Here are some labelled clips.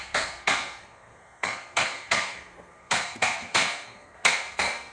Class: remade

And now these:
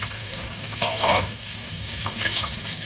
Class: remade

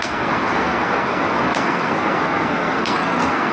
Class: remade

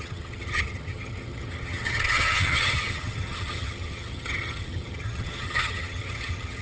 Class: remade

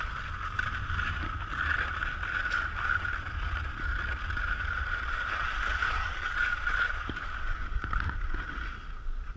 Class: recorded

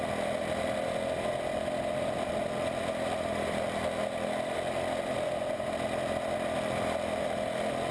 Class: recorded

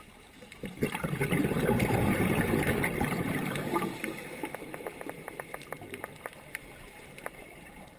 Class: remade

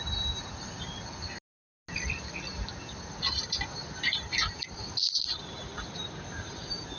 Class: recorded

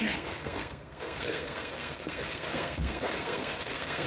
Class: remade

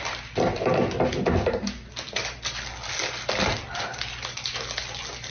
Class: recorded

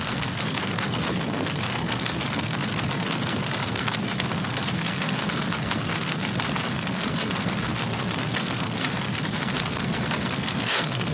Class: remade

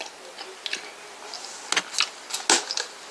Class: recorded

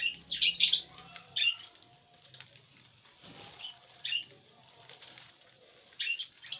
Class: recorded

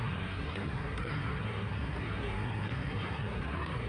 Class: remade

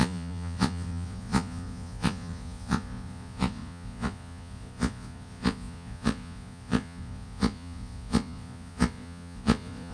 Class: remade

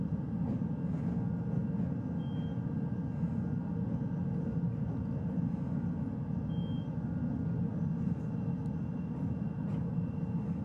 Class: recorded